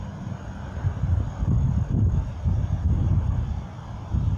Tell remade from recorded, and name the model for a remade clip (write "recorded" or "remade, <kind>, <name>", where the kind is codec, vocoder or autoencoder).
recorded